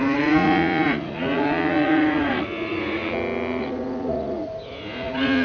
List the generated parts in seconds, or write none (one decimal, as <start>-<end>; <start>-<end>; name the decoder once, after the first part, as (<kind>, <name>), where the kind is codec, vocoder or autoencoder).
0.0-3.0 (vocoder, Vocos); 3.6-5.4